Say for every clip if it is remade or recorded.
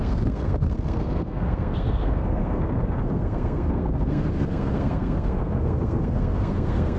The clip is remade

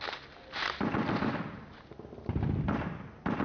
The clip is recorded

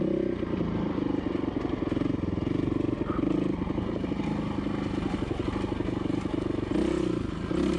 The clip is recorded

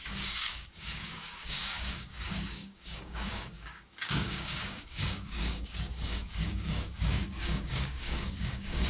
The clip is remade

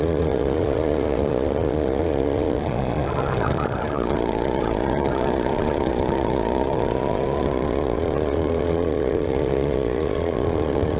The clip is remade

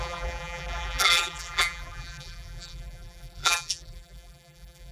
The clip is remade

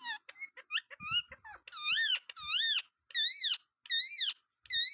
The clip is recorded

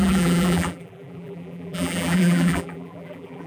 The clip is remade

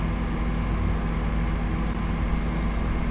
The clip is recorded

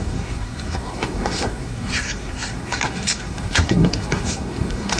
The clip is remade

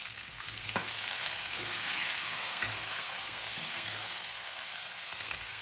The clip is remade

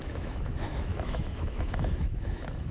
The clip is remade